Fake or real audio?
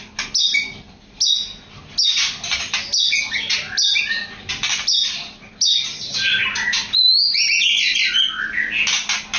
real